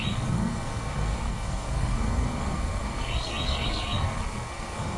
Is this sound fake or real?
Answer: fake